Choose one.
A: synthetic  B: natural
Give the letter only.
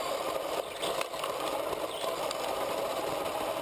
B